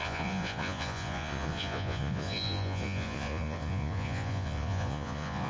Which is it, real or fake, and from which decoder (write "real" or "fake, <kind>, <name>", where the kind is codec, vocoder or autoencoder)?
fake, vocoder, Vocos